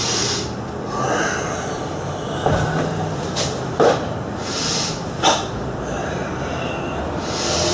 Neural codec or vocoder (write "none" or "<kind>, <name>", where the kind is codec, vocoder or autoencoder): vocoder, BigVGAN v2